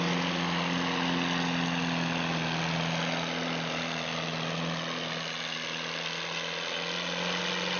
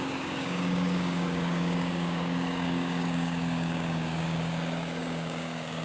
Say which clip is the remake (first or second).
second